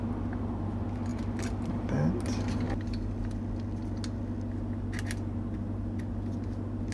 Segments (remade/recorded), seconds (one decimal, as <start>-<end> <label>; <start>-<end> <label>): 0.0-6.9 recorded